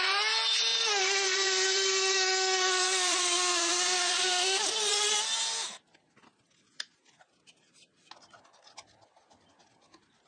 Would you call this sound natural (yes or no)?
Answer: yes